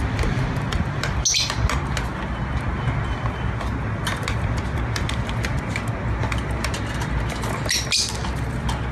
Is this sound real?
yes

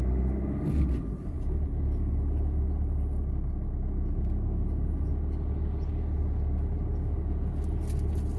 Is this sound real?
yes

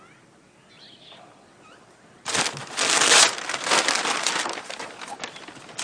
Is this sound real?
yes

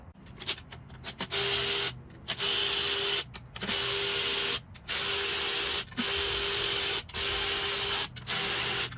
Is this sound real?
yes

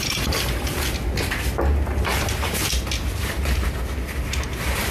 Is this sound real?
yes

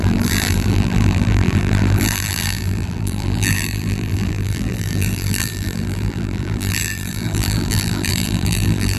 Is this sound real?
no